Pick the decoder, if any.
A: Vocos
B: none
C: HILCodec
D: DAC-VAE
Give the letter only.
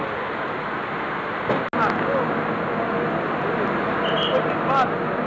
B